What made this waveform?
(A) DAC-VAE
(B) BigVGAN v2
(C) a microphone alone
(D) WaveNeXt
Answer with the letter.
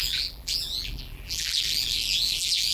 B